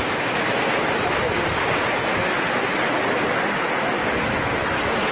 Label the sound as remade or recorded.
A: recorded